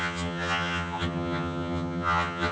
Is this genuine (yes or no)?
no